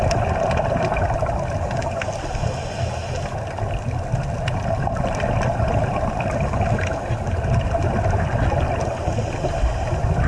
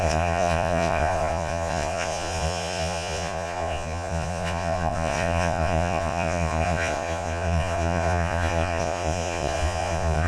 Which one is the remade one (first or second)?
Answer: second